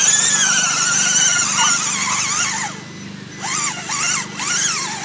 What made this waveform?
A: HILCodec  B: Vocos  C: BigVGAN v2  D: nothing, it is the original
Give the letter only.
D